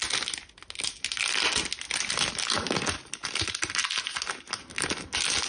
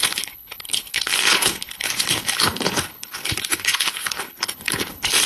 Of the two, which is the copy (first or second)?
second